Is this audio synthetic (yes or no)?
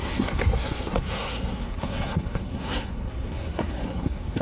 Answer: yes